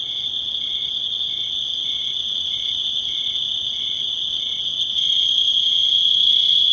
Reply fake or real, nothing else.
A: fake